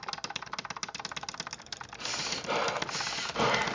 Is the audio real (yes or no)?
yes